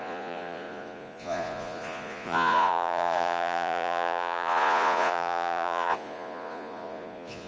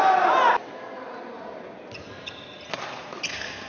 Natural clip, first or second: second